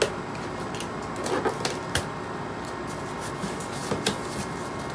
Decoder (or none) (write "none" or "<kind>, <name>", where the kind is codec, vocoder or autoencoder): none